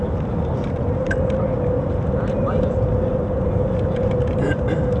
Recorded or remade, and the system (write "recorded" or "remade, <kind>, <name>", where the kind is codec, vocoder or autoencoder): recorded